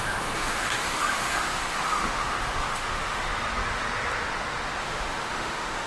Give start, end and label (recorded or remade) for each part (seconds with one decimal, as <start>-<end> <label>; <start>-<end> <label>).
0.0-3.3 remade; 3.3-4.8 recorded; 4.8-5.9 remade